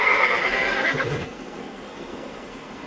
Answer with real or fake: fake